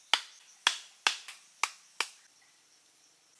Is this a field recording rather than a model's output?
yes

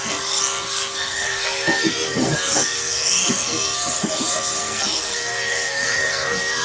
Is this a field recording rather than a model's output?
no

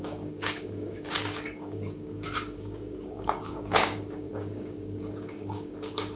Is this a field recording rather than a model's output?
no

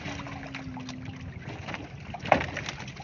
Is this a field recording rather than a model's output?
yes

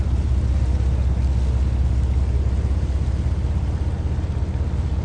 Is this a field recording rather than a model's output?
yes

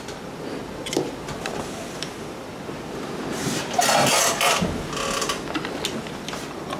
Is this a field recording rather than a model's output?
yes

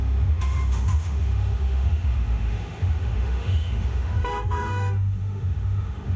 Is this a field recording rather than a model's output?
no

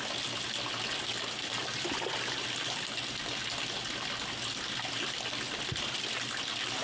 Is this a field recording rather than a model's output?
yes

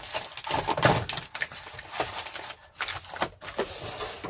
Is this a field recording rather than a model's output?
yes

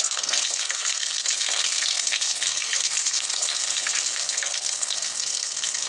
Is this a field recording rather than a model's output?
no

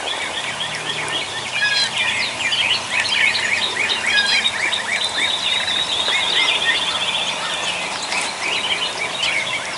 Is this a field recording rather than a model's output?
yes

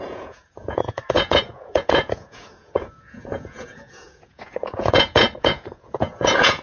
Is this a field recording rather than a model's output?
no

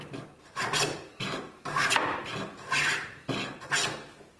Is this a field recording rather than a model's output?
yes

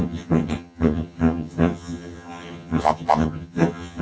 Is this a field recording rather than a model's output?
no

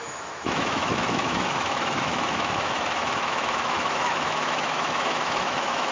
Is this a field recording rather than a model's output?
no